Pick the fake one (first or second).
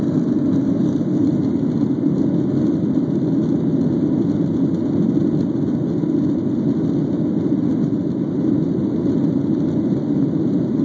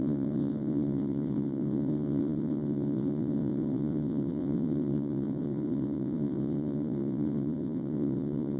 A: second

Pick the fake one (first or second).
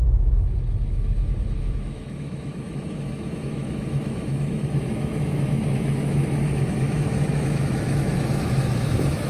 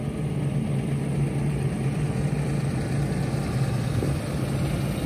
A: first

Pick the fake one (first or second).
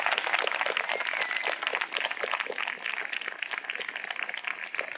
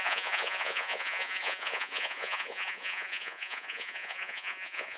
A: second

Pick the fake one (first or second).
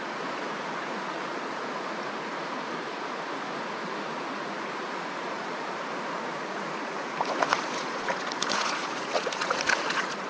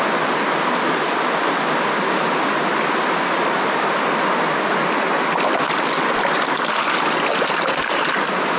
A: first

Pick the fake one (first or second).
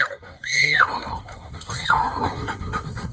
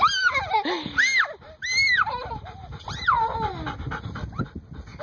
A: first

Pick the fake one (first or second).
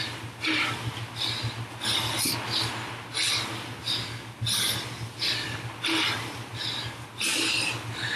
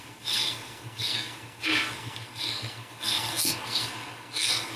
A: second